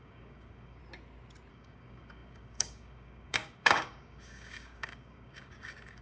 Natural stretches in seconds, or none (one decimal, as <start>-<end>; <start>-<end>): 0.8-1.5